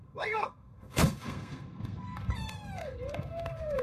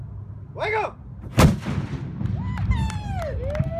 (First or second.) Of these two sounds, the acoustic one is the second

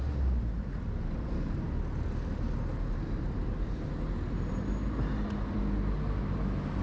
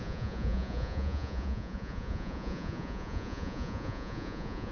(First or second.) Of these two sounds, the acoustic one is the first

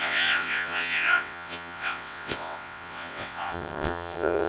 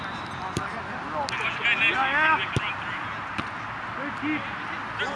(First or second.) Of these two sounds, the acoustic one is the second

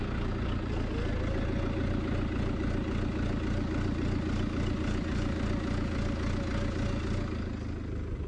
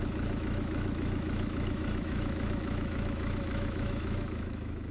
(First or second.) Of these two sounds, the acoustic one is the first